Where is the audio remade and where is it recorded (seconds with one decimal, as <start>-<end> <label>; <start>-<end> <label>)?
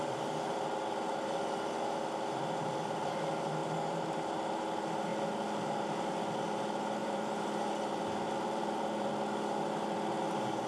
0.0-3.6 recorded; 3.6-4.6 remade; 4.6-7.0 recorded; 7.0-9.1 remade; 9.1-10.7 recorded